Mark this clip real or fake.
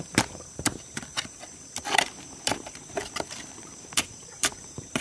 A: fake